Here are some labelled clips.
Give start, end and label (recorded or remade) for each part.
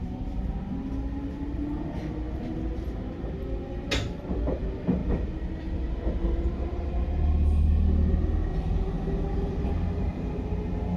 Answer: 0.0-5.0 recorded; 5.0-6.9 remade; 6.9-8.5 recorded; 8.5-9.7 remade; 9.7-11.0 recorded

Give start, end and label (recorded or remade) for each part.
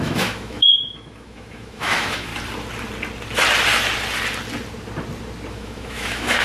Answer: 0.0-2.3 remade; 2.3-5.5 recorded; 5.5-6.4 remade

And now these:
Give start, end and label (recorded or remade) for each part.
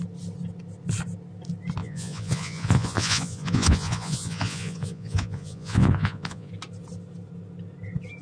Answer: 0.0-1.8 recorded; 1.8-6.5 remade; 6.5-8.2 recorded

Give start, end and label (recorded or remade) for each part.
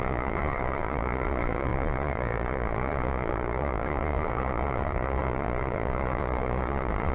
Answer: 0.0-7.1 remade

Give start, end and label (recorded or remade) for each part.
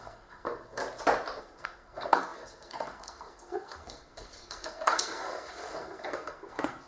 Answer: 0.0-0.8 remade; 0.8-1.4 recorded; 1.4-6.9 remade